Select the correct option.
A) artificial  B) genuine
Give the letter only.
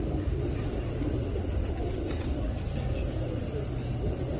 B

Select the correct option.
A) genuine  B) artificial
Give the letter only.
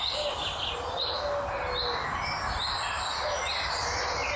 A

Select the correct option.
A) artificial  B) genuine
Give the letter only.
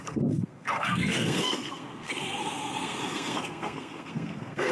A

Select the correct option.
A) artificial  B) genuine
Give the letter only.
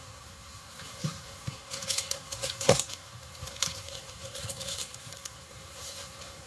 A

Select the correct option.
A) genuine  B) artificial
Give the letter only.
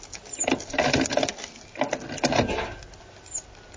A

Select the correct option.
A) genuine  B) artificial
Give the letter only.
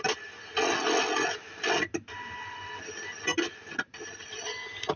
A